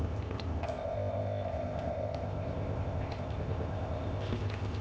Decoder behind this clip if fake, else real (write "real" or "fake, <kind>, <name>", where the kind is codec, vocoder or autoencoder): fake, codec, ZipCodec